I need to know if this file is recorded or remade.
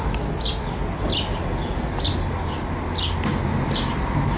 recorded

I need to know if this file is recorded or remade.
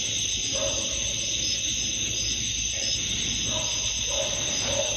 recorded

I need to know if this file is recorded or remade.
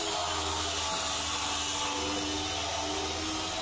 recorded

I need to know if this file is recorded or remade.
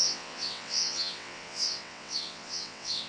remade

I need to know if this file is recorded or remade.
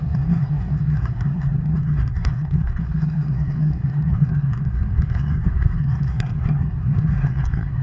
remade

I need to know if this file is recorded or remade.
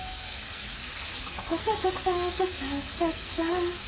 remade